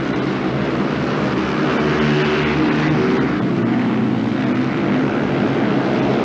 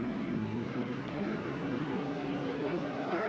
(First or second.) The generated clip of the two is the second